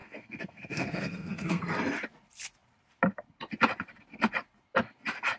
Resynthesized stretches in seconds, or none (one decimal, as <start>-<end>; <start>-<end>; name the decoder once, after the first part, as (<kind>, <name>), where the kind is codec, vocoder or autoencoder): 0.0-1.6 (codec, SNAC)